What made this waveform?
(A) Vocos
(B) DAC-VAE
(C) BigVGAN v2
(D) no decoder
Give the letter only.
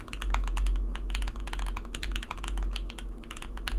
B